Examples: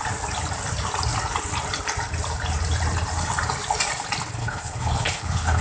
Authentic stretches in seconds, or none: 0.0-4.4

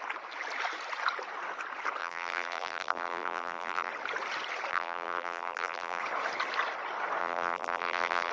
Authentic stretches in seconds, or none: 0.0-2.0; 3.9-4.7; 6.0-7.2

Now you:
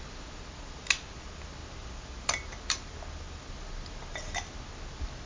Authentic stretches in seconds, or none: 0.0-5.3

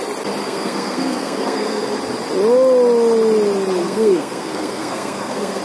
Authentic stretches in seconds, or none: 0.0-0.4; 1.9-3.8